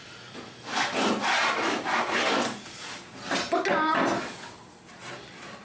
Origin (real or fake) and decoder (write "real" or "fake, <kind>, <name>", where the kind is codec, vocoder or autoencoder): real